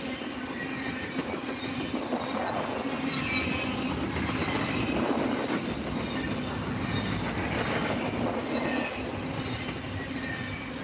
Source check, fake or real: real